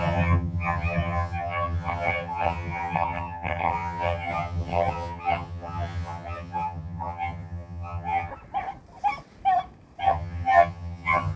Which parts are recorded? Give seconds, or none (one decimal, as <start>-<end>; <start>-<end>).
8.3-10.0